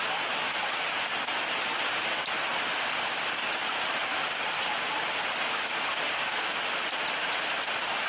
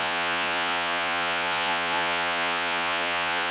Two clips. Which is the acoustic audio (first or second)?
first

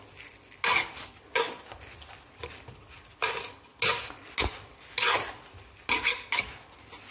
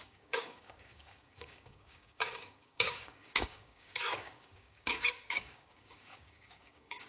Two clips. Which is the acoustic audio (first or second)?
first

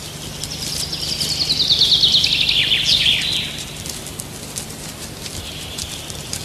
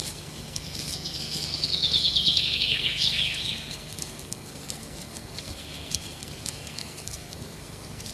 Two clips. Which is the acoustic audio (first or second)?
first